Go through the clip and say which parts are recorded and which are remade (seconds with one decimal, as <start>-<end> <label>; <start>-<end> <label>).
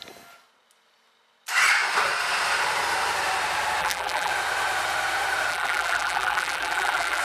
0.0-3.8 recorded; 3.8-4.3 remade; 4.3-5.5 recorded; 5.5-7.2 remade